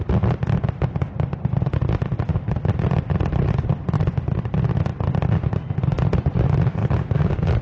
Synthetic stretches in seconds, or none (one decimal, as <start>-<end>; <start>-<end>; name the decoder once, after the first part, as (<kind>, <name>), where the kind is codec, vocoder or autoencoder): none